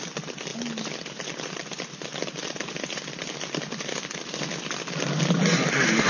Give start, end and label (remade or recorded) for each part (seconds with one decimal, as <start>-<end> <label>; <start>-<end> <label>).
0.0-6.1 recorded